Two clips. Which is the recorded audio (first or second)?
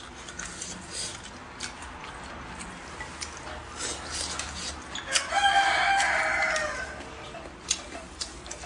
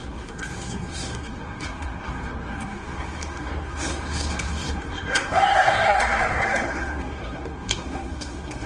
first